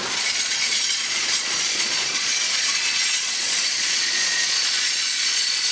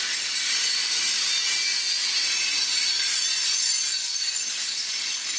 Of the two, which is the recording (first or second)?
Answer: second